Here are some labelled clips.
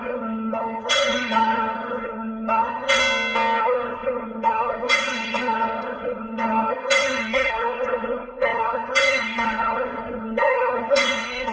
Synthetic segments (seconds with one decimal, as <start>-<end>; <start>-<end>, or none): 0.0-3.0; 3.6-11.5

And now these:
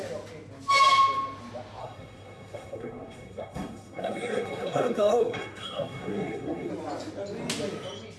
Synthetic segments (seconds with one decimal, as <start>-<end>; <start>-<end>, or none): 1.8-6.7

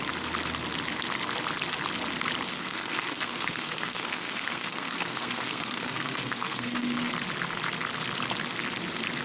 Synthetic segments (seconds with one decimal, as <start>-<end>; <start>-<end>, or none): 2.5-7.1

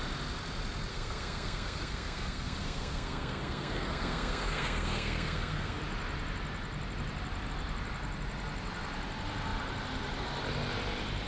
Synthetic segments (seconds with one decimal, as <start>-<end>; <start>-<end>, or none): 0.9-5.8

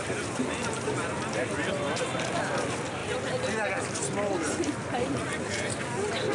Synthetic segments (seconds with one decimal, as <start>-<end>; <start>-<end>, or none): none

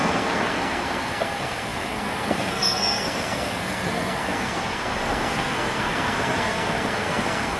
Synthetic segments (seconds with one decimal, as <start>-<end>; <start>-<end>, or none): 0.0-7.6